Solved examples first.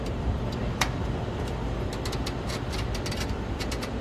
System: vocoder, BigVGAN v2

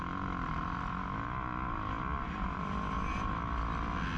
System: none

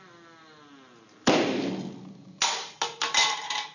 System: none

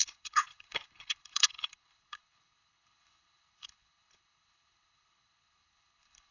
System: codec, HILCodec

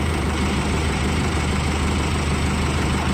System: vocoder, BigVGAN v2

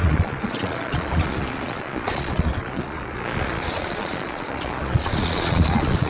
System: vocoder, Vocos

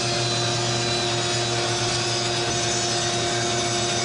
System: none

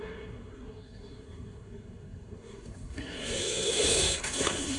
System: codec, SNAC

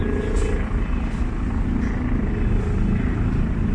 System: none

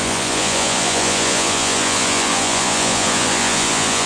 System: vocoder, Vocos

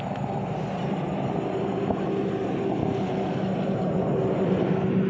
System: none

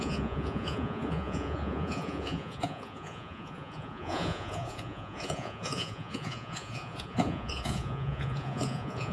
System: vocoder, Vocos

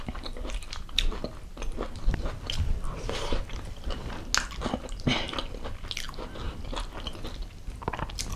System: none